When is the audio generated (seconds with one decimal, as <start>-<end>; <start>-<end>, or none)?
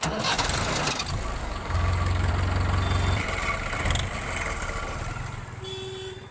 1.4-2.3